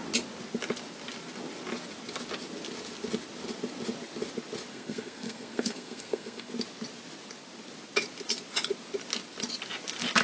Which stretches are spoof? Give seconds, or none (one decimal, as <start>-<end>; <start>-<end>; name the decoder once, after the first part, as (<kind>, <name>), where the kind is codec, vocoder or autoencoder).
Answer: 4.7-6.5 (codec, SNAC)